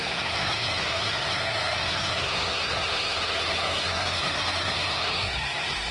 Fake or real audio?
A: fake